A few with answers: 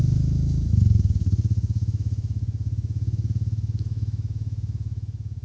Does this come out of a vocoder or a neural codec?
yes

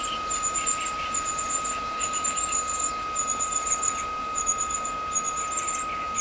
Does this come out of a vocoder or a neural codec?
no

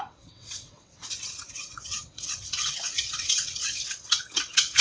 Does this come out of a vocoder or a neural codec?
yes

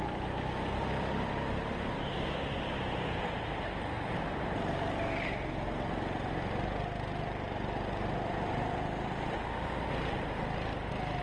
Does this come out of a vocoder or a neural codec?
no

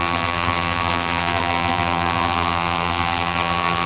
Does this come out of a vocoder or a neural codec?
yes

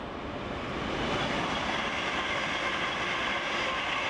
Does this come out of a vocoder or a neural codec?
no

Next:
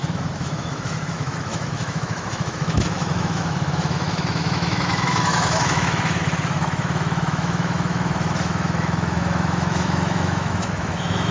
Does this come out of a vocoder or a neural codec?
yes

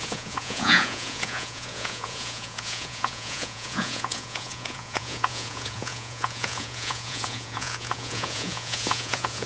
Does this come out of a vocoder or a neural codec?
yes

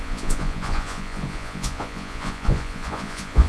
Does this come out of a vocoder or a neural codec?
yes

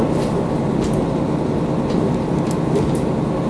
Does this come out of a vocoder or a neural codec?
no